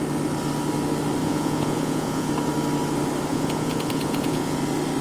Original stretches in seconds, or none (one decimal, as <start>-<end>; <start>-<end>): 0.0-1.2; 2.3-3.3; 4.6-5.0

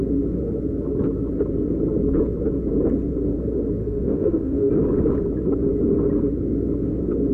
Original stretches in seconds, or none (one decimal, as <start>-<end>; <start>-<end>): 0.0-3.8; 4.7-7.3